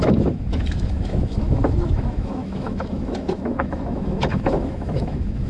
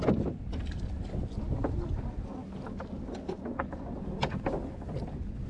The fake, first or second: first